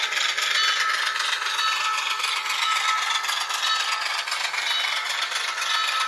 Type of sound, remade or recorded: recorded